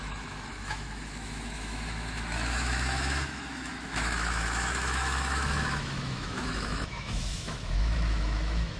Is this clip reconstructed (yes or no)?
yes